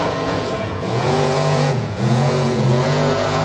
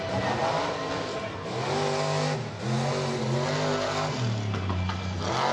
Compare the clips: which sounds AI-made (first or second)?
first